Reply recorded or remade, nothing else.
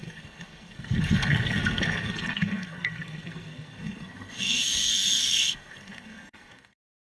remade